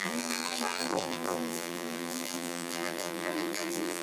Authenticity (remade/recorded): remade